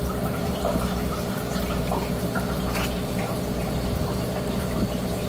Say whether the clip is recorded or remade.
remade